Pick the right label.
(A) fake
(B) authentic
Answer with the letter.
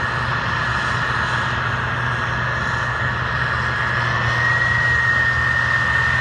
B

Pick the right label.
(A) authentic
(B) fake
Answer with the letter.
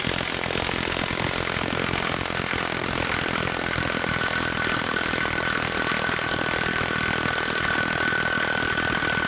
A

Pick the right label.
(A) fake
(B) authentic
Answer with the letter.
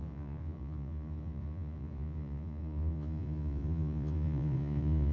A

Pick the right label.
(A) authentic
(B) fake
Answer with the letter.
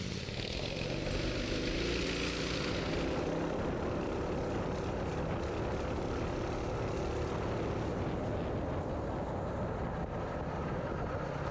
A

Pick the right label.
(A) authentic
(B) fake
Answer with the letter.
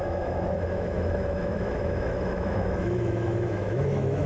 B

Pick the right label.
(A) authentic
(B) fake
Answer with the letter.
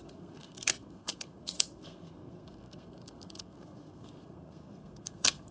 B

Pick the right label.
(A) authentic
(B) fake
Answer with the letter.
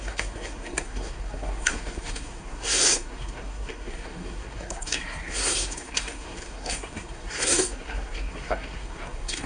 B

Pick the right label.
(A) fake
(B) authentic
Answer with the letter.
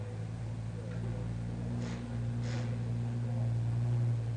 B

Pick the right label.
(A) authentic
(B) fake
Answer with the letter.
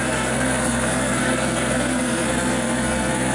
B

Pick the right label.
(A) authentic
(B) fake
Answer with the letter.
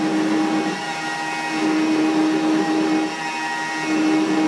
A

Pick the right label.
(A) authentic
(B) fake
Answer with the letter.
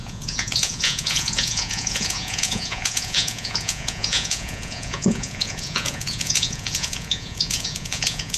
B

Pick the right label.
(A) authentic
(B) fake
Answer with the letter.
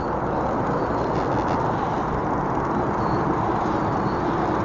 A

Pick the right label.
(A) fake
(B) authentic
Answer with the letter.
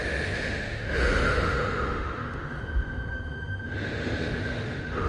A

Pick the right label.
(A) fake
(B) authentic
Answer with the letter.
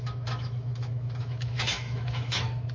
A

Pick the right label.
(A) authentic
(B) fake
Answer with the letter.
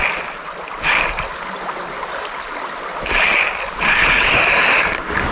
A